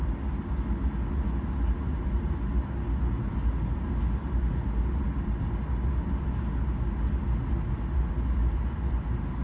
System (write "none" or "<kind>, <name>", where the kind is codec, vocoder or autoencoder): none